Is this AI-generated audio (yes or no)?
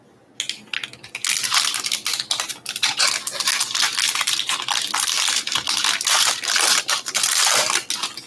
no